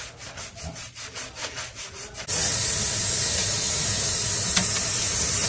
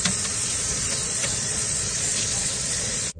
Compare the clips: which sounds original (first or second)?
first